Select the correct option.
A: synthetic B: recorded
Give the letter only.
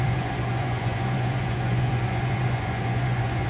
A